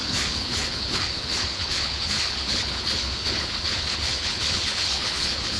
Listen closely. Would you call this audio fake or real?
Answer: fake